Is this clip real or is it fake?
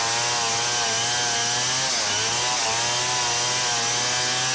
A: real